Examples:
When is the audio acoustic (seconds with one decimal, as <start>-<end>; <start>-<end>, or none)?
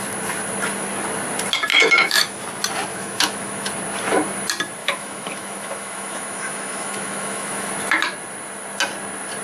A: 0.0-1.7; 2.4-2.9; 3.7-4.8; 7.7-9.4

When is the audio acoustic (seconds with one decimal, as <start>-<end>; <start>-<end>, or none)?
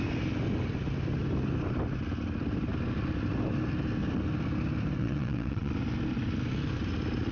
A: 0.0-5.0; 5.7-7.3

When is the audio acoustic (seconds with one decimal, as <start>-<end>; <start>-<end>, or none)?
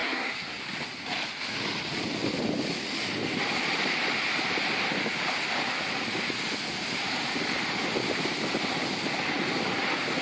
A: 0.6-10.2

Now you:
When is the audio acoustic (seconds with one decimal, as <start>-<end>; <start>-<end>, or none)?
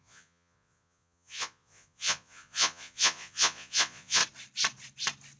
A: 4.2-5.4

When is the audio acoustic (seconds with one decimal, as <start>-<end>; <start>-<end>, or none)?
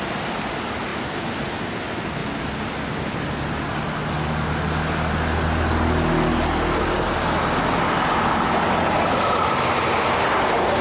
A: 0.0-10.8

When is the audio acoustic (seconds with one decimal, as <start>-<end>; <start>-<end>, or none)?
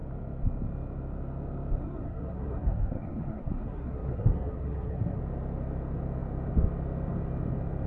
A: 0.0-1.8; 5.2-7.9